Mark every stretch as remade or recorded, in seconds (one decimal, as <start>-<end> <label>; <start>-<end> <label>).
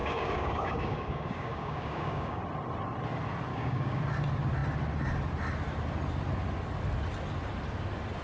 0.0-2.4 remade; 2.4-3.5 recorded; 3.5-4.0 remade; 4.0-8.2 recorded